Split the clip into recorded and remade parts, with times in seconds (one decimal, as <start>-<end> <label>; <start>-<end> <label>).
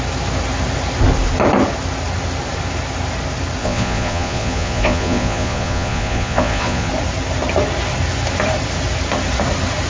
0.0-3.6 recorded; 3.6-6.9 remade; 6.9-9.9 recorded